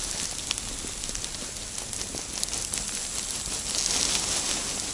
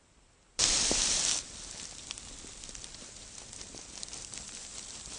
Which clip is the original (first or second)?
first